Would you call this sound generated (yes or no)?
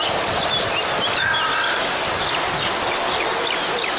no